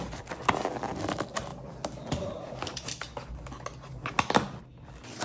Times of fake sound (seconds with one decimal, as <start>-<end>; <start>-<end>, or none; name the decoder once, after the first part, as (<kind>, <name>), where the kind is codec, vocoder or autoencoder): none